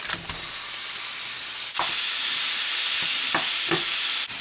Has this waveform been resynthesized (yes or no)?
yes